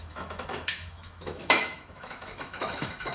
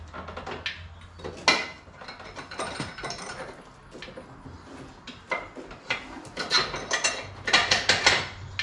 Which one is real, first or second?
second